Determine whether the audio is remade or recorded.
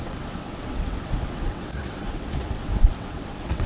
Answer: remade